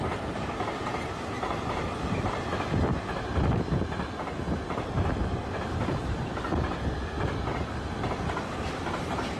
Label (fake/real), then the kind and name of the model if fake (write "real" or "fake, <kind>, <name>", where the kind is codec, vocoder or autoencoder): real